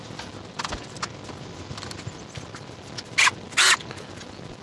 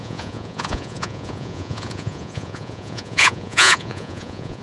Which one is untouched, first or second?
first